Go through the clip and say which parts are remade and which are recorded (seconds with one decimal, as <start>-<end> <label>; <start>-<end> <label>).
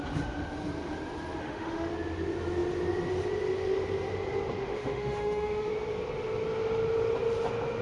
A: 0.0-1.4 recorded; 1.4-1.9 remade; 1.9-4.6 recorded; 4.6-5.7 remade; 5.7-7.8 recorded